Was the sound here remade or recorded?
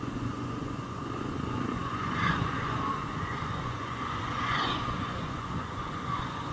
remade